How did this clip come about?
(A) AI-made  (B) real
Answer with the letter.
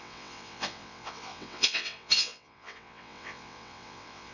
A